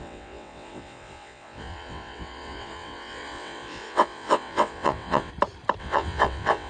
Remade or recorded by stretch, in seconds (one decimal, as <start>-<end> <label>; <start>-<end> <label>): 0.0-5.3 remade; 5.3-5.8 recorded; 5.8-6.7 remade

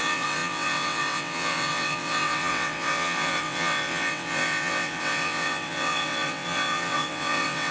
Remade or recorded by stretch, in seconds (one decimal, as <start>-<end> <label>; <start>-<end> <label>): 0.0-7.7 remade

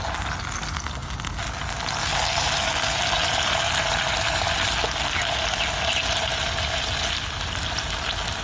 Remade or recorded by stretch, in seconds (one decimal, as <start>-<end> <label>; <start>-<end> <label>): 0.0-8.4 recorded

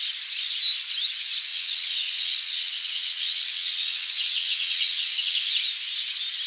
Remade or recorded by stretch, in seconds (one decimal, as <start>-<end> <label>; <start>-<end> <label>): 0.0-1.5 recorded; 1.5-5.4 remade; 5.4-6.5 recorded

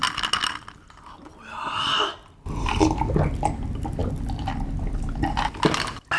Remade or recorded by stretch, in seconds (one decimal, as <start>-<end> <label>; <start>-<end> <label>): 0.0-6.2 recorded